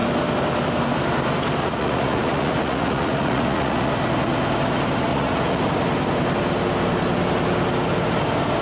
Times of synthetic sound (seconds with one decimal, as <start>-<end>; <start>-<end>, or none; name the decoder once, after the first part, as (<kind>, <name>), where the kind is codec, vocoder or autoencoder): 1.6-3.9 (vocoder, Vocos); 5.1-5.6